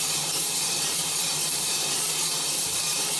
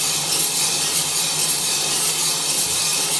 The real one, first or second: second